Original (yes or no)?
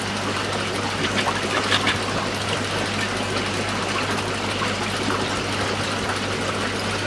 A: yes